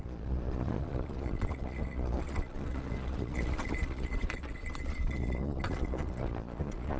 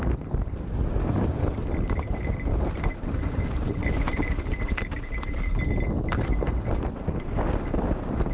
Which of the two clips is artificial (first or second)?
first